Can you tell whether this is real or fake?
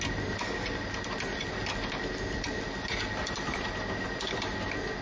real